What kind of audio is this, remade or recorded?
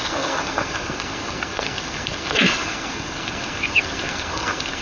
remade